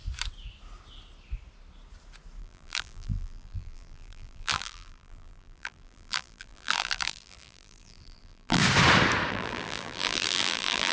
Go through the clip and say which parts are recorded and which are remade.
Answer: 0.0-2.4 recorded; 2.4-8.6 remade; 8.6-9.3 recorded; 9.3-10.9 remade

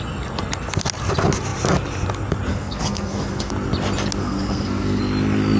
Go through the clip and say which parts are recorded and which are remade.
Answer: 0.0-2.5 recorded; 2.5-3.5 remade; 3.5-4.2 recorded; 4.2-5.0 remade; 5.0-5.6 recorded

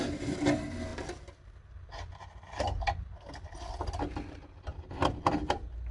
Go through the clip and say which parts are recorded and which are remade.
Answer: 0.0-5.9 recorded

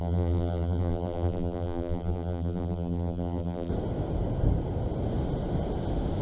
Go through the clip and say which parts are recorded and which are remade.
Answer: 0.0-3.7 remade; 3.7-6.2 recorded

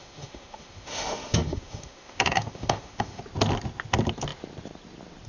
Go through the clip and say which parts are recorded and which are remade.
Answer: 0.0-3.2 remade; 3.2-5.3 recorded

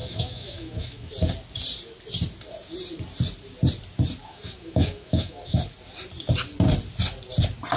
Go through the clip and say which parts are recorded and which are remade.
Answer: 0.0-1.1 remade; 1.1-4.2 recorded; 4.2-5.6 remade; 5.6-7.8 recorded

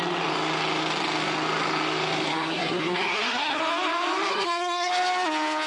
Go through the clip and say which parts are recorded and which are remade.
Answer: 0.0-2.3 recorded; 2.3-3.6 remade; 3.6-4.3 recorded; 4.3-4.9 remade; 4.9-5.7 recorded

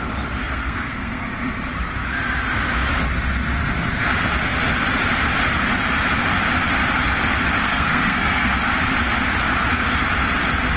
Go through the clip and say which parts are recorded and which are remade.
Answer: 0.0-0.4 recorded; 0.4-1.3 remade; 1.3-7.6 recorded; 7.6-8.5 remade; 8.5-10.8 recorded